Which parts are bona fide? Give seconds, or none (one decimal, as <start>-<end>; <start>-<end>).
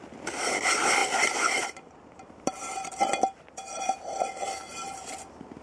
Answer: 0.0-1.0; 2.9-4.6; 5.1-5.6